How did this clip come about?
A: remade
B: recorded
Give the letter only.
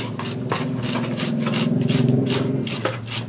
B